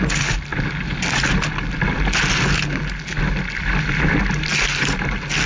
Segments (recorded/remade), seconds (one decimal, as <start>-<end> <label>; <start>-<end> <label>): 0.0-5.5 recorded

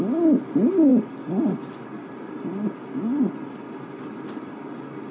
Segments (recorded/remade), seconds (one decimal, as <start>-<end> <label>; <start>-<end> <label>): 0.0-5.1 recorded

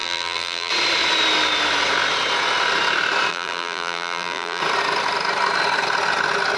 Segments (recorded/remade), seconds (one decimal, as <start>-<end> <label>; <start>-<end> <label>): 0.0-0.7 remade; 0.7-3.3 recorded; 3.3-4.6 remade; 4.6-6.6 recorded

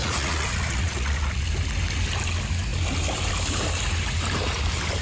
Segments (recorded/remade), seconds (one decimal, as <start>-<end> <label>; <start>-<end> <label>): 0.0-1.5 remade; 1.5-5.0 recorded

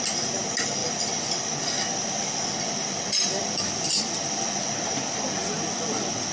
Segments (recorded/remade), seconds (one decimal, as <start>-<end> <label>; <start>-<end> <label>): 0.0-0.8 recorded; 0.8-4.6 remade; 4.6-5.4 recorded; 5.4-6.3 remade